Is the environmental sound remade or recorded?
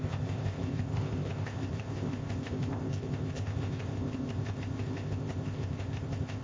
remade